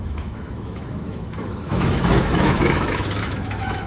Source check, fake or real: fake